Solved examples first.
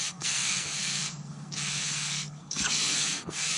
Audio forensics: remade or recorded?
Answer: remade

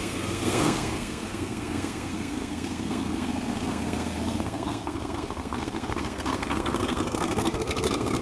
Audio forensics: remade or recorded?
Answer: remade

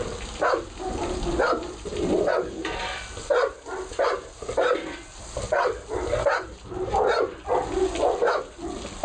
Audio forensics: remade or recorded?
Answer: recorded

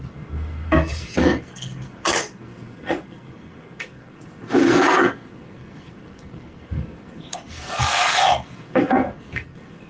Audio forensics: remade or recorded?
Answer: remade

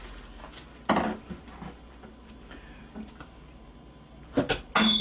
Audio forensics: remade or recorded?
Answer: recorded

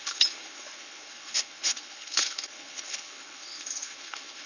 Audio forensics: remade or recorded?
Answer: remade